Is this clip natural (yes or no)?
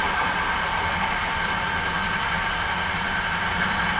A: yes